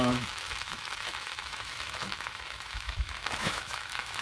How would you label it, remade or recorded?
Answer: remade